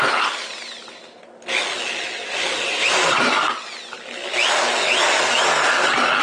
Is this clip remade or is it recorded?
recorded